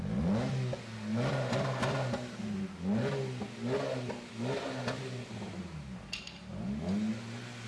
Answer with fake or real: real